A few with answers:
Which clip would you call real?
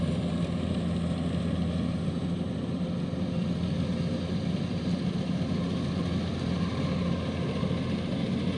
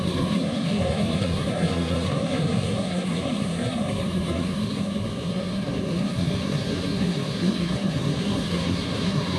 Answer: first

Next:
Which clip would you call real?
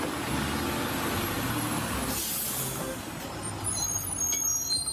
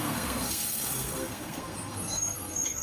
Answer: first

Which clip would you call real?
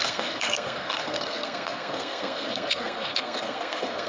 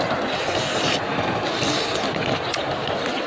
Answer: second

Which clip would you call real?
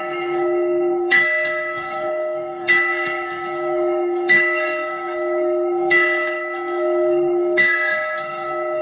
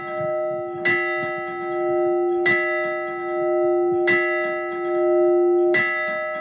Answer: second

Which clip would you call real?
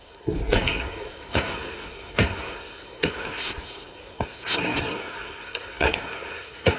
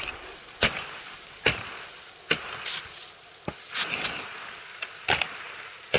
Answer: second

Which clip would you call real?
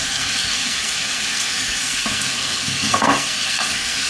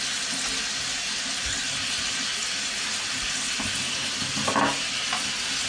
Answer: second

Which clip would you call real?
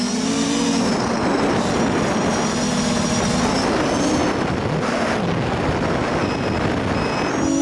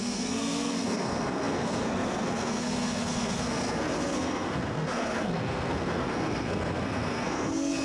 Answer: first